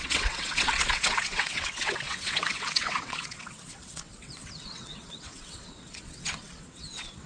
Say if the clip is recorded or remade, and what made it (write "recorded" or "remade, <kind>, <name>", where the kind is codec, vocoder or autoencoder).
remade, vocoder, WaveNeXt